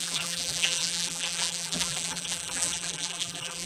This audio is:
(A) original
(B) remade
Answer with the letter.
B